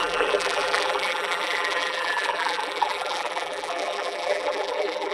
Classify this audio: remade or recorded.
remade